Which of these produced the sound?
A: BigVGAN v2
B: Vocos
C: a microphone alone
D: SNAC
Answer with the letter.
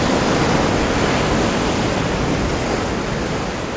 C